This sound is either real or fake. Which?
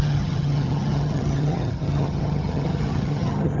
fake